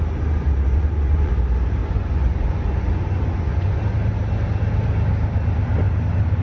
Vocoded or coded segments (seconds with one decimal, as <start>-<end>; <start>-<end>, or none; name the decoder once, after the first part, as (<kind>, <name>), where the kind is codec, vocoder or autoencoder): 0.7-1.3 (vocoder, Vocos); 1.8-3.8